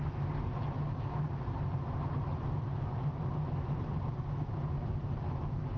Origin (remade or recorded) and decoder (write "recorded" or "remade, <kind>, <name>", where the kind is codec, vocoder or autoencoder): recorded